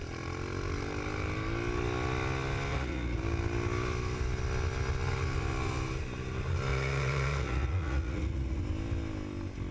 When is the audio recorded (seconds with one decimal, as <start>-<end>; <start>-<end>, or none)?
0.0-2.7; 3.2-6.7; 8.6-9.7